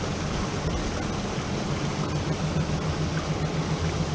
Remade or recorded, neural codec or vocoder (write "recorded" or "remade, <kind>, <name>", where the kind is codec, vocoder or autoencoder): recorded